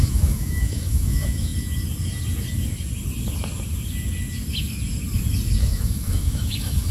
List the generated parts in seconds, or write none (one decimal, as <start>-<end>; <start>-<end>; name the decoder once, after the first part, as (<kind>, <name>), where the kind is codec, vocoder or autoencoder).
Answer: 0.0-1.5 (autoencoder, DAC-VAE); 5.6-6.9